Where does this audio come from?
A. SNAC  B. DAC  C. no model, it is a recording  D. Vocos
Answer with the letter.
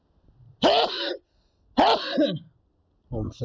C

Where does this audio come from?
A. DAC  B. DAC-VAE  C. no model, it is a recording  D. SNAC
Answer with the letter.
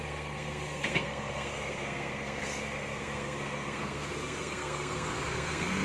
D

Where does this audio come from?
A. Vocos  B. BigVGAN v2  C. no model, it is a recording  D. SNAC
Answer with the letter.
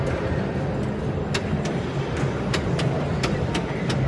C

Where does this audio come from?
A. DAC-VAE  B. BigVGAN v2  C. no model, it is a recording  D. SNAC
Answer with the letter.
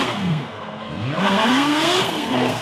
D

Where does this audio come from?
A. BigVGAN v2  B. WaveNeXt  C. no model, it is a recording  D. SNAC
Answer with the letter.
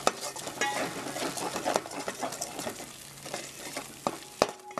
C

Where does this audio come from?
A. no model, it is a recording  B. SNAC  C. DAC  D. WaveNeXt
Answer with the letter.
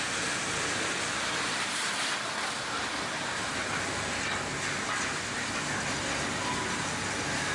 A